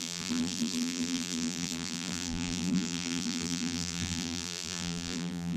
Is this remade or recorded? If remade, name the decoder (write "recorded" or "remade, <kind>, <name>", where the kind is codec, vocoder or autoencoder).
remade, vocoder, BigVGAN v2